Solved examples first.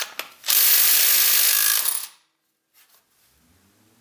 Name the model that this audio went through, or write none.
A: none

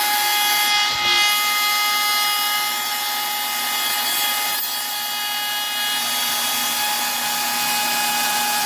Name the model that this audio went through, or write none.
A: none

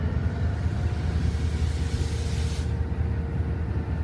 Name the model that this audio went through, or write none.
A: none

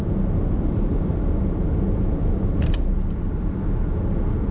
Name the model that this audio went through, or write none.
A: none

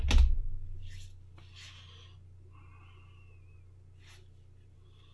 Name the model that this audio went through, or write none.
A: none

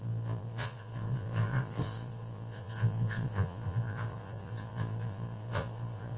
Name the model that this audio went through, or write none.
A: vocoder, Vocos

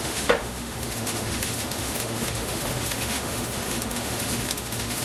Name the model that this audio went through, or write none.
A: autoencoder, DAC-VAE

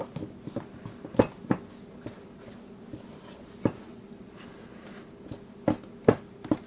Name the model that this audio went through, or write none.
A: none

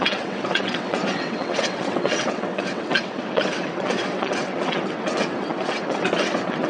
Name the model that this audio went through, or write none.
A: vocoder, WaveNeXt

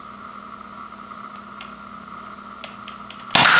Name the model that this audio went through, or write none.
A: none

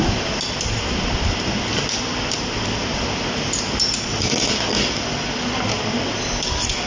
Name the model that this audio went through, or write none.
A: none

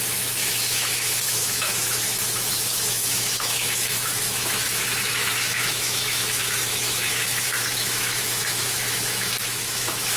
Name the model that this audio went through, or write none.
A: autoencoder, DAC-VAE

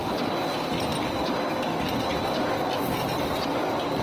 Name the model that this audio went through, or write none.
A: none